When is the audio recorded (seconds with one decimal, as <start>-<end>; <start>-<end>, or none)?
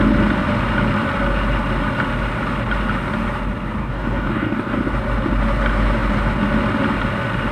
0.0-3.8; 4.8-7.5